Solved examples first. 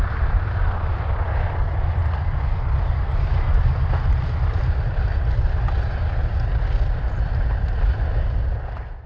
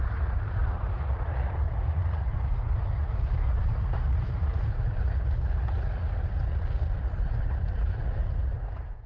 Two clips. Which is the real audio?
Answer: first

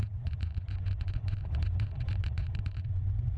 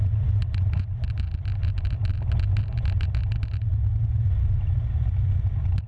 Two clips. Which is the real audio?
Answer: second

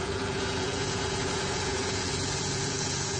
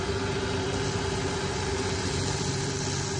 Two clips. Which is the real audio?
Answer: second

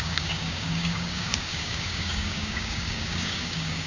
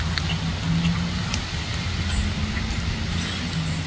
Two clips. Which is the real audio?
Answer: second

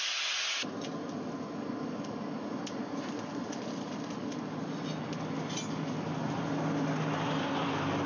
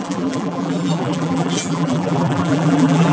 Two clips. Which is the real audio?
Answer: first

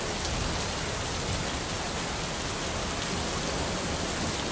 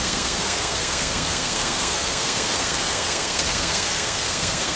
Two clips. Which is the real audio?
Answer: first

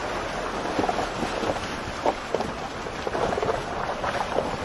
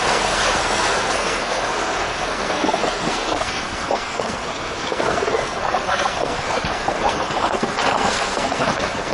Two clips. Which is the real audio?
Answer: first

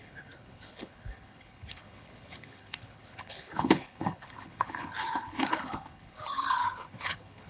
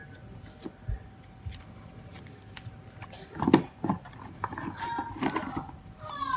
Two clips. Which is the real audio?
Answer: second